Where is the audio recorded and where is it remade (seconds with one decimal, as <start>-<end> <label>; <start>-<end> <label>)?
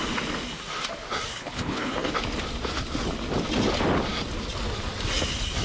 0.0-1.3 recorded; 1.3-2.1 remade; 2.1-5.6 recorded